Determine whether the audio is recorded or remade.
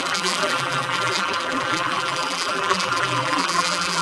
remade